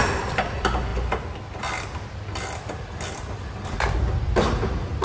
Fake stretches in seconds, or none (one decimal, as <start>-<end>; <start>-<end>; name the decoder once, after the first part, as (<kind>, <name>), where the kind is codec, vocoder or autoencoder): none